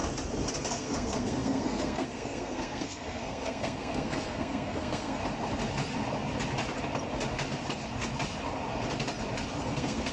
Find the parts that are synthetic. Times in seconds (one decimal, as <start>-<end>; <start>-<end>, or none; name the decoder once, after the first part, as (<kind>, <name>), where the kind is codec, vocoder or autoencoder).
0.6-5.2 (codec, SNAC); 9.6-10.1

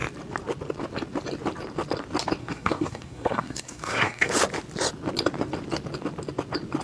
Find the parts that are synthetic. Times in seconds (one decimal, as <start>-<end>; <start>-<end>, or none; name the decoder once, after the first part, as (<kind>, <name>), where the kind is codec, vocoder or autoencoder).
2.4-4.3 (codec, SNAC)

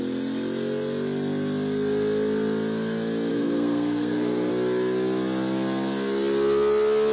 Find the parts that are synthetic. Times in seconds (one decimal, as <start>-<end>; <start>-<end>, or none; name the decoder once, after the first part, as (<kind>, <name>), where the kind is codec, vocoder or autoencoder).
3.3-4.5 (codec, SNAC)

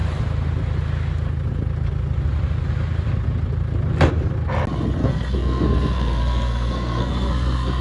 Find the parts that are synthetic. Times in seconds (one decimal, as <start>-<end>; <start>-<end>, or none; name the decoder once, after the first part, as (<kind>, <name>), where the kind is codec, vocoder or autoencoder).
5.0-7.8 (codec, SNAC)